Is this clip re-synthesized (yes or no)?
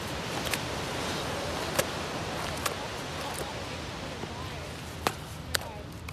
yes